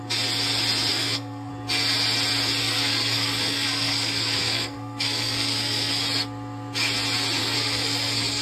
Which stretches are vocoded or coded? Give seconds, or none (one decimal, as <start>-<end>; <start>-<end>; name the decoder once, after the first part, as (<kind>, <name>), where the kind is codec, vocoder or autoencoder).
0.9-1.5 (codec, SNAC); 2.6-5.9; 7.4-8.4